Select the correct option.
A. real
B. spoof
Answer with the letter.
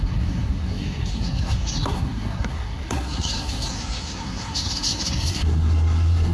B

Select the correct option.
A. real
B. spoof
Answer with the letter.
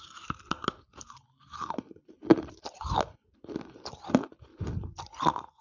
A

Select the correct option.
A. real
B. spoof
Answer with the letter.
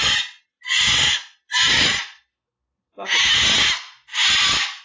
A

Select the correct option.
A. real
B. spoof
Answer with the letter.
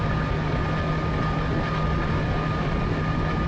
A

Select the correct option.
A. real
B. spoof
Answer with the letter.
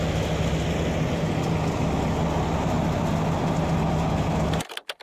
A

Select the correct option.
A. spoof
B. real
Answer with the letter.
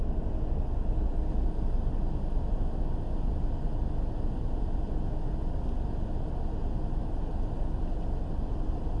B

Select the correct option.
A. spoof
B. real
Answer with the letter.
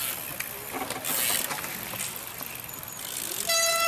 B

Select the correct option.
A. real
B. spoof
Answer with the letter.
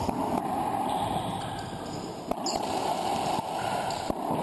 A